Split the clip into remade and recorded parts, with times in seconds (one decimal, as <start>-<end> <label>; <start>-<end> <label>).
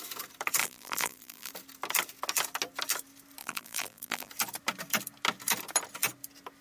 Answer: 0.0-0.6 recorded; 0.6-1.5 remade; 1.5-3.4 recorded; 3.4-4.3 remade; 4.3-6.6 recorded